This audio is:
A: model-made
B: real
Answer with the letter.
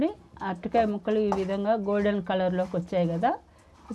B